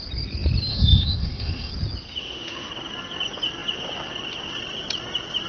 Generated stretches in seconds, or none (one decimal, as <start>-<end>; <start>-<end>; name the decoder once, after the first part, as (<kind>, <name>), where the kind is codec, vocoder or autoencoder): 0.7-1.7 (autoencoder, DAC-VAE); 2.2-2.7